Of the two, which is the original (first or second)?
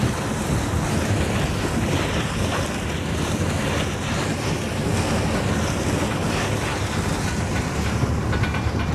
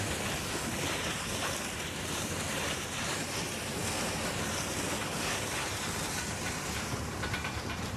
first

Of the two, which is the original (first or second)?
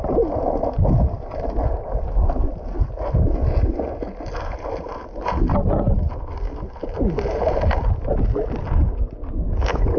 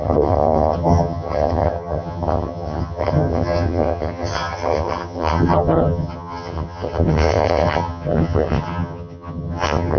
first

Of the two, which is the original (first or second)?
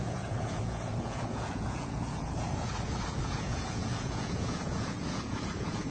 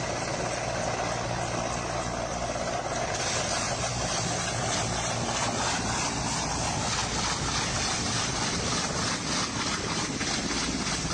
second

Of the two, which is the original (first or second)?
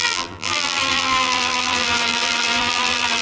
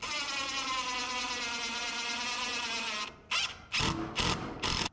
second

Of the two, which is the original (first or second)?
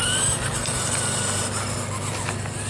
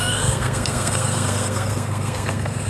first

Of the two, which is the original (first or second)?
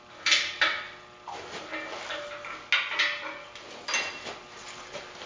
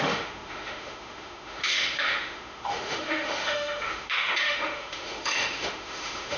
first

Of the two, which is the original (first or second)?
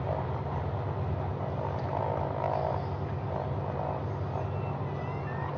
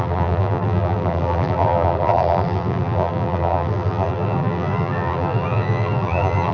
first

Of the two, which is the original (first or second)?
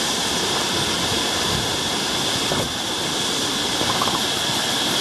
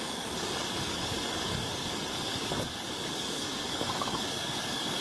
first